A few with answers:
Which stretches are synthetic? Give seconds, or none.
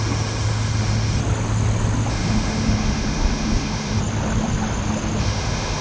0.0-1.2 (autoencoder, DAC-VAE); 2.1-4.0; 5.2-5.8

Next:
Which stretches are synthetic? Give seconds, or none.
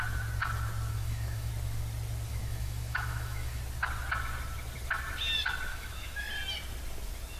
0.9-1.5 (autoencoder, DAC-VAE); 2.3-3.6; 5.7-6.2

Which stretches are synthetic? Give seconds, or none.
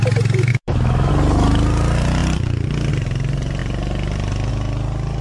0.5-1.1 (autoencoder, DAC-VAE)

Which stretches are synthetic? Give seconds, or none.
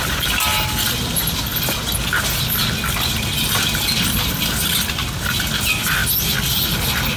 none